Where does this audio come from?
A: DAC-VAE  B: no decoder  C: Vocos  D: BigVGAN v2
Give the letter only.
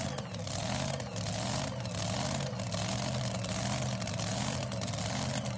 B